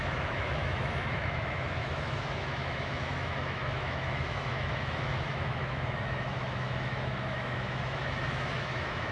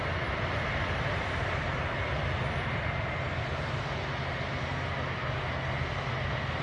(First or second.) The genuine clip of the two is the second